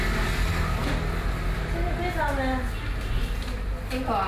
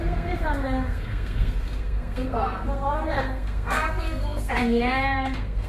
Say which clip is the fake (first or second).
second